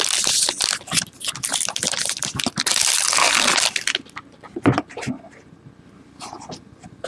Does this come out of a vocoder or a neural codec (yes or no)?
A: no